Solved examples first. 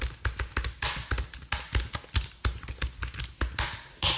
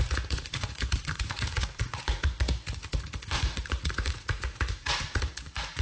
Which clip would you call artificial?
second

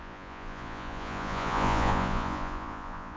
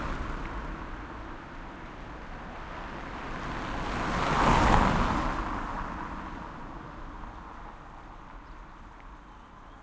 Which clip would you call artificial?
first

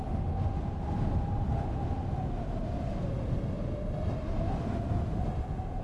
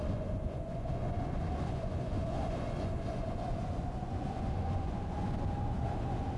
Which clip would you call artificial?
second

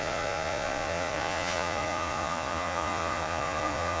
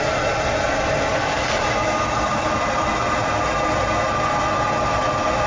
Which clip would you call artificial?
first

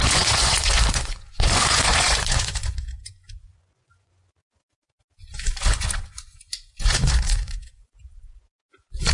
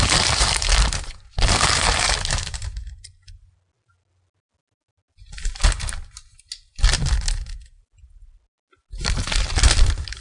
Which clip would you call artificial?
first